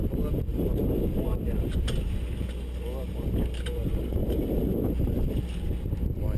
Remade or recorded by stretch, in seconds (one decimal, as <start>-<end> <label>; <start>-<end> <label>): 0.0-0.5 recorded; 0.5-1.5 remade; 1.5-4.2 recorded; 4.2-5.3 remade; 5.3-6.4 recorded